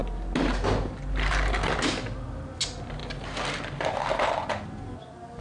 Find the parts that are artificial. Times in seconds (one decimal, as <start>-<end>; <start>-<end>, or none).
none